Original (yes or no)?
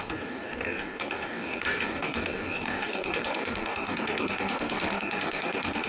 no